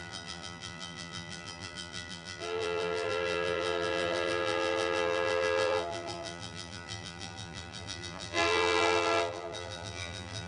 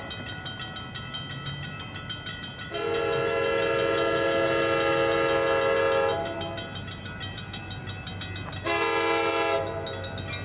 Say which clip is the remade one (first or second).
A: first